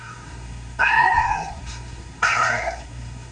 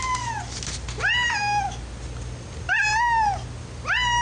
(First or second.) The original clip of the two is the second